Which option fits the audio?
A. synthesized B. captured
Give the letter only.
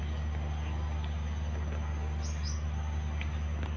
B